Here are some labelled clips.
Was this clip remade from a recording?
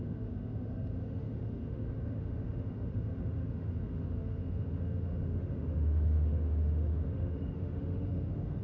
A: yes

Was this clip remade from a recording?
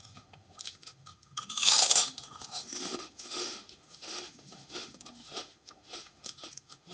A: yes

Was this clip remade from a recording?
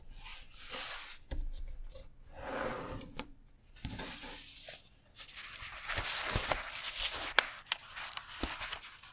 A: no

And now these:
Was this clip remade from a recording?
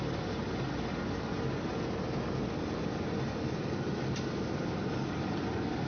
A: no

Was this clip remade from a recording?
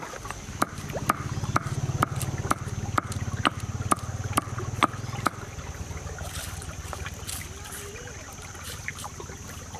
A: no